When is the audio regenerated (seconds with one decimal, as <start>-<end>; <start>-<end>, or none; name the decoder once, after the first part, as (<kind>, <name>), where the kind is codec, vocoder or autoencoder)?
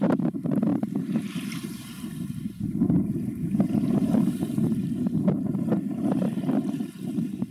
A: 0.0-7.5 (vocoder, BigVGAN v2)